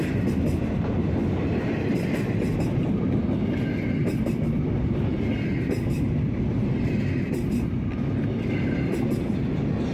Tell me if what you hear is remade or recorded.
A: recorded